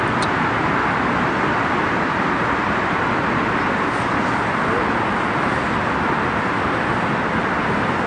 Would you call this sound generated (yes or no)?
no